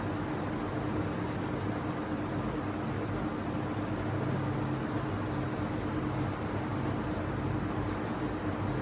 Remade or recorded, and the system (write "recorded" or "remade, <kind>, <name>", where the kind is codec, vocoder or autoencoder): recorded